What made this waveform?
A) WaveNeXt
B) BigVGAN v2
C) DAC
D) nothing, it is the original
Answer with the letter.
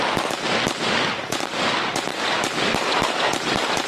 D